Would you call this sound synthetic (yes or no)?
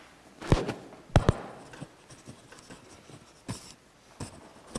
no